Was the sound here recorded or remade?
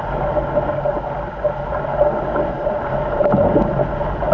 recorded